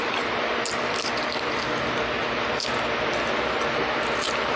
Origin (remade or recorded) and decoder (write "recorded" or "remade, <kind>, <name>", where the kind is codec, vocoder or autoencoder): recorded